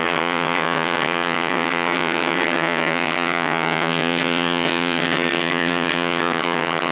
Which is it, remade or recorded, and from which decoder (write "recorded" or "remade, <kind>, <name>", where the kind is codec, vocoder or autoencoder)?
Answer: remade, vocoder, HiFi-GAN